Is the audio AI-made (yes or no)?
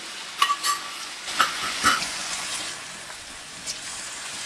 yes